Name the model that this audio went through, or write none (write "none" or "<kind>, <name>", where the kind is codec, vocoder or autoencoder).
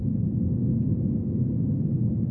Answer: none